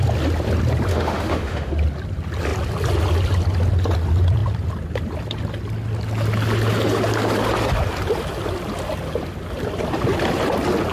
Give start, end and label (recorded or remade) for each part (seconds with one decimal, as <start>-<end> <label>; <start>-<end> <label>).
0.0-0.9 recorded; 0.9-1.7 remade; 1.7-10.9 recorded

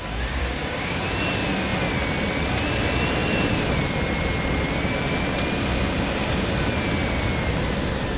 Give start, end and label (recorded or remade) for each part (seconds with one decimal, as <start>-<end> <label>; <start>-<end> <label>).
0.0-0.4 recorded; 0.4-1.0 remade; 1.0-8.2 recorded